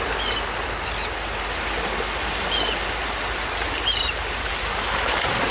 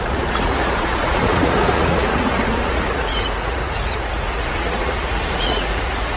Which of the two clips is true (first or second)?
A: first